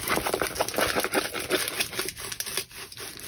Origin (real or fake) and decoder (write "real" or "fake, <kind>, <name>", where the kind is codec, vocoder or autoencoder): real